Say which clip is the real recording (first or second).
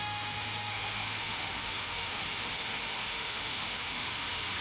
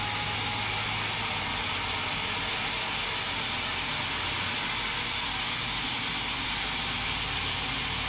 second